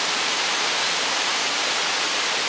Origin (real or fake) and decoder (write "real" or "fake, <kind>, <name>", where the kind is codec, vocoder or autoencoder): fake, vocoder, BigVGAN v2